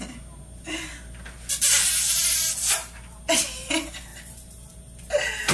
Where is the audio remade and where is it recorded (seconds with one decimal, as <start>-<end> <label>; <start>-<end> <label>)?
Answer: 0.0-5.5 recorded